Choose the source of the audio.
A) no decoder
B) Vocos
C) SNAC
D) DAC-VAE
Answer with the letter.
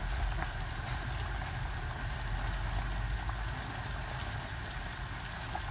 A